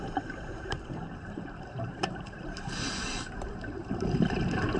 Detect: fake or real fake